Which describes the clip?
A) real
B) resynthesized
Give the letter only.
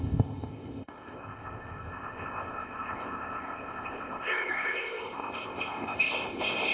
B